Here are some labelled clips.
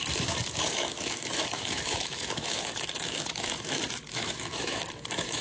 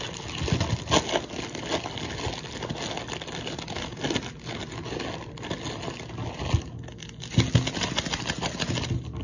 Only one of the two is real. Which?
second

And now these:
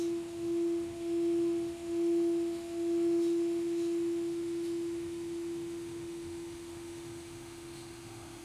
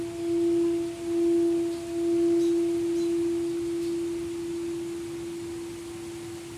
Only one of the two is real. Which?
second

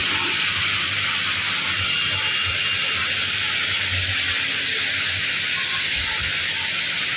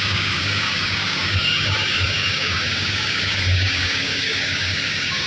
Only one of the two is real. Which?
first